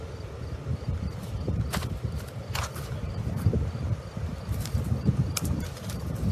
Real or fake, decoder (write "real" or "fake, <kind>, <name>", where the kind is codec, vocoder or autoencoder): fake, vocoder, BigVGAN v2